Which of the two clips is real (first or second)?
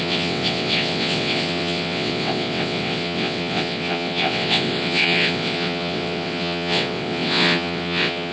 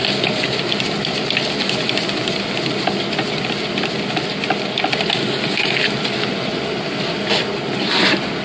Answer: second